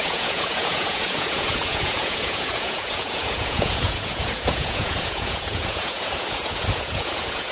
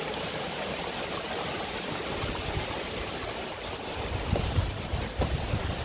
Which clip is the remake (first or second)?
first